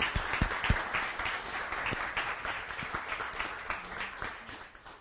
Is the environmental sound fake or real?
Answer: real